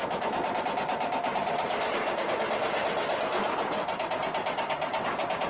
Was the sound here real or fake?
real